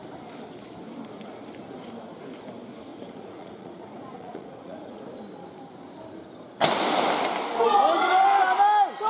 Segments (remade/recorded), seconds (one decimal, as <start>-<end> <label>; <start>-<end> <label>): 0.0-2.9 recorded; 2.9-5.0 remade; 5.0-9.1 recorded